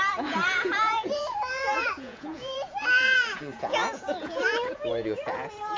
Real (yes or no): no